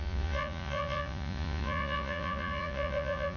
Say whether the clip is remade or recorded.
remade